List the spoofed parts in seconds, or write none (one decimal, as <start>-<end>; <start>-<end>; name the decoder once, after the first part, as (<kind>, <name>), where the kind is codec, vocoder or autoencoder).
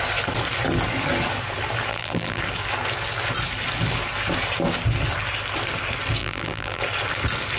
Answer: 1.9-2.4 (vocoder, BigVGAN v2); 6.2-6.8